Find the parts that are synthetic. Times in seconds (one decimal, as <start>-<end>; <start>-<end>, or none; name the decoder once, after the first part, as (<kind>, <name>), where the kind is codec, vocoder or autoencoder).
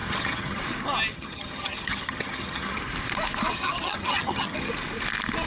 0.0-0.6 (vocoder, HiFi-GAN); 1.1-2.8; 3.5-4.7